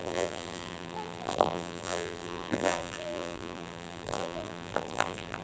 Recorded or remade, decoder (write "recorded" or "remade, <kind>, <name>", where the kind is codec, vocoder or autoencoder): remade, vocoder, BigVGAN v2